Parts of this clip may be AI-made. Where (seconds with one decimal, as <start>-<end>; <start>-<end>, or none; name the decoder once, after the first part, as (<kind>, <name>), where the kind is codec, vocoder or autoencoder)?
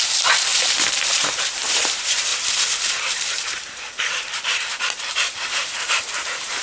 0.0-2.3 (vocoder, BigVGAN v2); 2.9-6.6